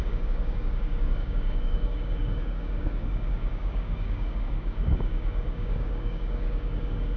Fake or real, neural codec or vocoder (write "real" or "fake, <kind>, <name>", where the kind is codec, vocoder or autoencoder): fake, codec, DAC